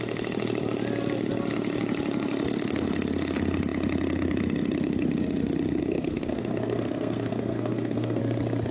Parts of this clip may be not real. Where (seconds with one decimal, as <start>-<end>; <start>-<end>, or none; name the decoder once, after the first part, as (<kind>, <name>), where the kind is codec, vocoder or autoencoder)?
5.8-8.2 (codec, SNAC)